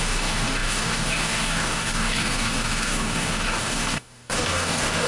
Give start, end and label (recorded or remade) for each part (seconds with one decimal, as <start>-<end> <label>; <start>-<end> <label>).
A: 0.0-5.1 remade